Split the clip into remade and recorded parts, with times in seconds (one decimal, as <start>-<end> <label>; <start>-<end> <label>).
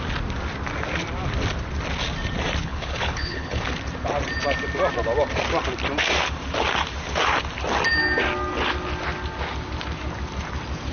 0.0-2.6 recorded; 2.6-3.6 remade; 3.6-10.9 recorded